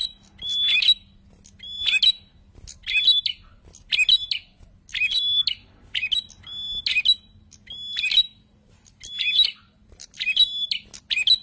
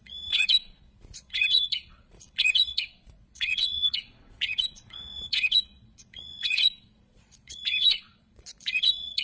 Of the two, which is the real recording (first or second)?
first